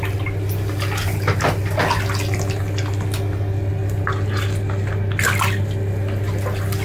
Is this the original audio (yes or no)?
yes